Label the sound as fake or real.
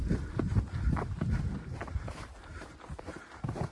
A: real